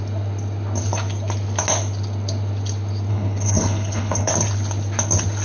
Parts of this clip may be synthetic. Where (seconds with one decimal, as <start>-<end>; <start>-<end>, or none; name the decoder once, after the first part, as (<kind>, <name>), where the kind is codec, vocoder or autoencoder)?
3.1-4.3 (codec, HILCodec)